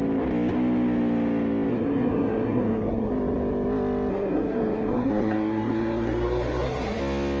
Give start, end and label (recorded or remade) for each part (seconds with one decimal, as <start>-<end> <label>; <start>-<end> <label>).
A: 0.0-1.7 recorded; 1.7-3.1 remade; 3.1-4.1 recorded; 4.1-7.0 remade; 7.0-7.4 recorded